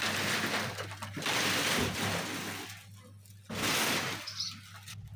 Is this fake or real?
real